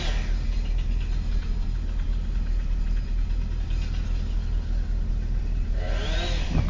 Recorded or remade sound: recorded